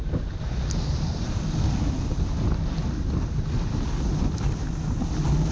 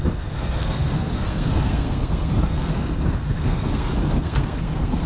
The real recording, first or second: first